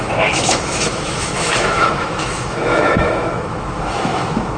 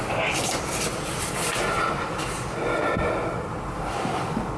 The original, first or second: second